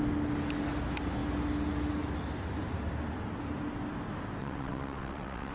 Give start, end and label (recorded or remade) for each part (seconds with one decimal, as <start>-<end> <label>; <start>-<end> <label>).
0.0-4.4 recorded; 4.4-5.5 remade